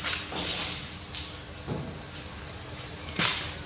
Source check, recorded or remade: recorded